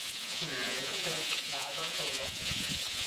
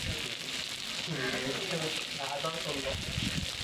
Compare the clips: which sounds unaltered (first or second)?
second